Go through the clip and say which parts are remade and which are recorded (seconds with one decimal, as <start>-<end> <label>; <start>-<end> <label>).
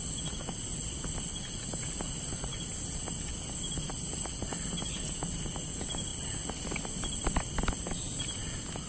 0.0-8.9 recorded